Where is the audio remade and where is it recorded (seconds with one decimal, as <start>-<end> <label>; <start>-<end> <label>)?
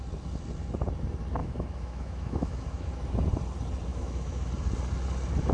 0.0-1.4 recorded; 1.4-2.9 remade; 2.9-3.9 recorded; 3.9-4.5 remade; 4.5-5.5 recorded